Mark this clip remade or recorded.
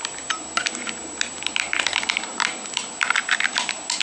recorded